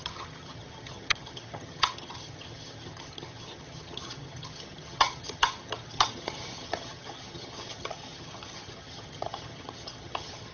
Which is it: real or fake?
fake